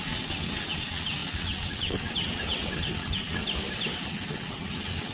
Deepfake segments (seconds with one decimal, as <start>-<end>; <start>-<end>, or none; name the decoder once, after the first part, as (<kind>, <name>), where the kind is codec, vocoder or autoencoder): 0.0-3.4 (vocoder, WaveNeXt); 4.1-5.1